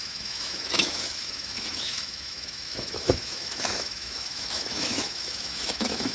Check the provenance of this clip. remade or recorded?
remade